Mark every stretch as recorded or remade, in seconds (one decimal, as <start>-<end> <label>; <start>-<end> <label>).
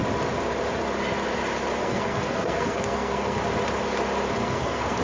0.0-1.8 recorded; 1.8-3.4 remade; 3.4-4.4 recorded; 4.4-5.0 remade